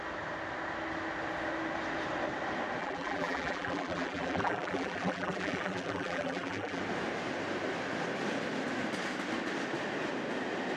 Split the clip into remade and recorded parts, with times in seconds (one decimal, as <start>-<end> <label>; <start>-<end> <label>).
0.0-2.8 recorded; 2.8-6.8 remade; 6.8-10.8 recorded